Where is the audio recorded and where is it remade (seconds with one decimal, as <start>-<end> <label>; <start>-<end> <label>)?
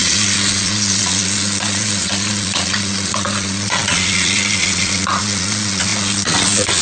0.0-6.8 remade